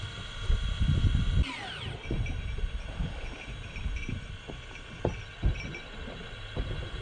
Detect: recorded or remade recorded